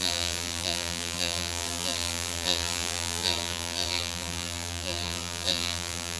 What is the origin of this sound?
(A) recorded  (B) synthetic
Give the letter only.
B